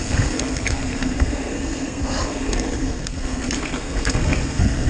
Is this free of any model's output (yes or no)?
no